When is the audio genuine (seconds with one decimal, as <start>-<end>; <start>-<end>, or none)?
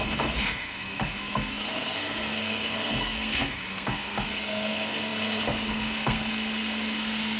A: none